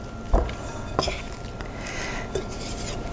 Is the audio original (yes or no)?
yes